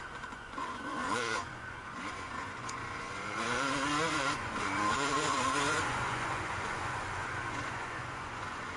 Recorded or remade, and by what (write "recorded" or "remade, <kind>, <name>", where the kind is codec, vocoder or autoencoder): remade, vocoder, Vocos